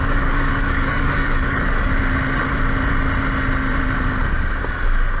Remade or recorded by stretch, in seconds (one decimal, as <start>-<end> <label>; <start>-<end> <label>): 0.0-1.9 remade; 1.9-5.2 recorded